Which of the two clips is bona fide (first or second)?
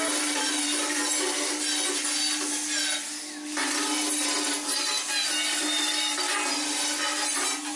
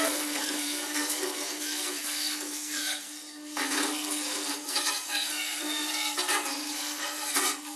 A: first